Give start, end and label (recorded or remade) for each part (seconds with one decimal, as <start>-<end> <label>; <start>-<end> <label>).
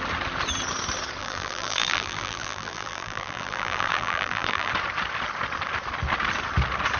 0.0-1.2 recorded; 1.2-4.7 remade; 4.7-7.0 recorded